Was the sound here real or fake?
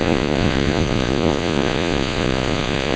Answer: fake